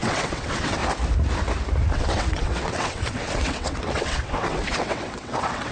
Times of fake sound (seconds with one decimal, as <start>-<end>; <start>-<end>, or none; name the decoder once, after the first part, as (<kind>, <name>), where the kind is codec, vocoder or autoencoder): 0.0-0.8 (vocoder, WaveNeXt); 1.9-5.7

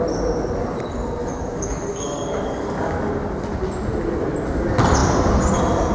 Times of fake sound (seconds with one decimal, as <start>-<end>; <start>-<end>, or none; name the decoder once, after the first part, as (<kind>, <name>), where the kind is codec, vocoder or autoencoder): 1.2-3.1 (codec, DAC)

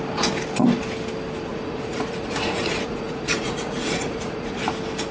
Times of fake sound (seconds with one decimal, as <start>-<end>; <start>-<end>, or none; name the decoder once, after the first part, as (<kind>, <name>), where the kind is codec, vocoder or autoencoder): 1.5-4.6 (vocoder, Vocos)

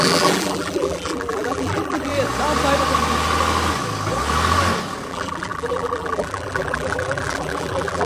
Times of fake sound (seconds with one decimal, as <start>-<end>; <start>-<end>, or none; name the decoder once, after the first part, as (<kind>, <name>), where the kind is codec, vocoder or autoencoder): 0.0-2.1 (vocoder, BigVGAN v2); 5.1-8.1

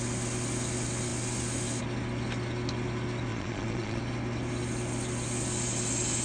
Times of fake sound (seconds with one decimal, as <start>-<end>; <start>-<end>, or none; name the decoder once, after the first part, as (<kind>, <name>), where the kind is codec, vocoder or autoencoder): 3.3-4.0 (vocoder, Vocos)

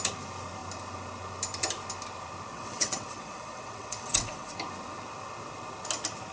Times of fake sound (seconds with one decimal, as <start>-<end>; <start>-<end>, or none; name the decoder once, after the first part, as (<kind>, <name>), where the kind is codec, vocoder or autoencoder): 2.5-4.5 (vocoder, WaveNeXt)

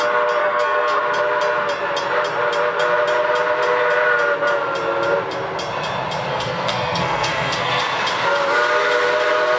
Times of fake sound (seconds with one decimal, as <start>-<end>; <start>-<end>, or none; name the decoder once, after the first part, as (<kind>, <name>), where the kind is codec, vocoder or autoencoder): 0.4-1.0 (codec, SNAC); 6.3-7.8